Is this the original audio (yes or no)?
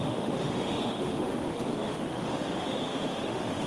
no